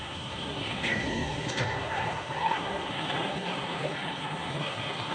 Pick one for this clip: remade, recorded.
remade